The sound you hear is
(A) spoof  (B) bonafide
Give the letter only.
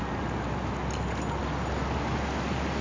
B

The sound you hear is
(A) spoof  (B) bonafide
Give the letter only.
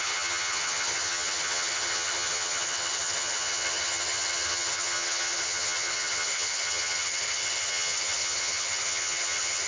A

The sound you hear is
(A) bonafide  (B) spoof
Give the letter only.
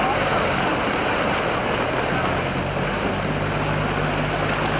A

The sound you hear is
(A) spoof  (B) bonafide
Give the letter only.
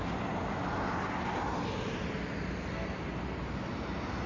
B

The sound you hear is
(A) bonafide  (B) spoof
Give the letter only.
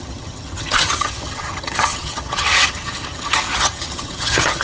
B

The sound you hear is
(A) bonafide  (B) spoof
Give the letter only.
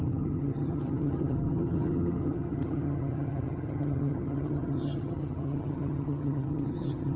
B